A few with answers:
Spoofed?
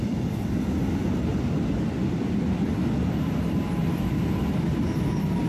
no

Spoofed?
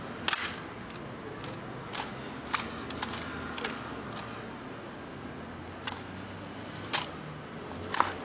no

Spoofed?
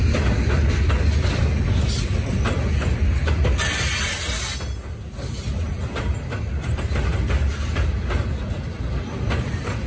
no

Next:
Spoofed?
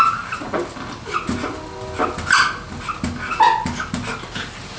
no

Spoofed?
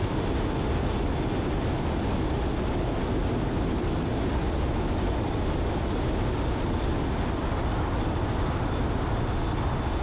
no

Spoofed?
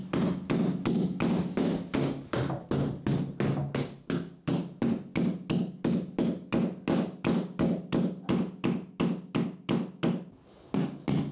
no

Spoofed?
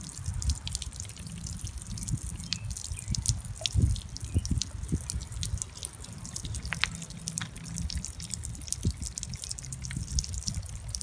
no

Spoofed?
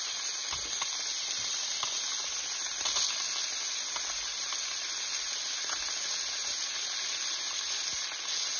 no